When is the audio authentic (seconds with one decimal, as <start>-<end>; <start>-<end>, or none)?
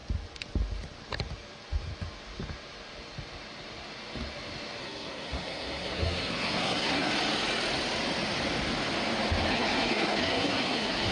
0.0-4.8; 7.1-9.5